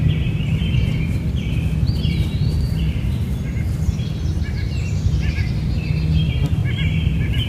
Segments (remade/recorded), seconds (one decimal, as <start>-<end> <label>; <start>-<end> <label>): 0.0-4.3 remade; 4.3-6.6 recorded; 6.6-7.5 remade